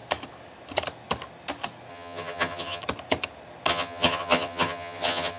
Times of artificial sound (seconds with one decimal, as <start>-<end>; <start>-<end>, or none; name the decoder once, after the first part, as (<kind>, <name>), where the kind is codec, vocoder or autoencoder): 1.9-2.8 (vocoder, HiFi-GAN); 3.7-5.4